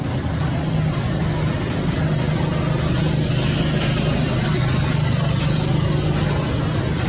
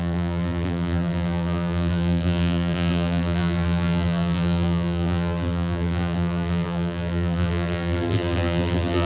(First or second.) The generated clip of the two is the second